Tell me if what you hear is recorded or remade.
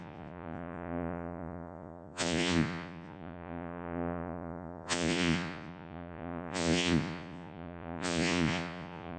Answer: remade